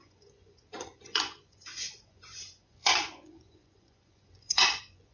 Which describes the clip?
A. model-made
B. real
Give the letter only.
A